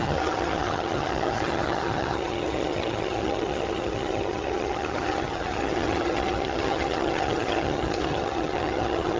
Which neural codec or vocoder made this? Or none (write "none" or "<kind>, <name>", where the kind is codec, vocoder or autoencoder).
vocoder, HiFi-GAN